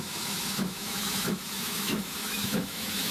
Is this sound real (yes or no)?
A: no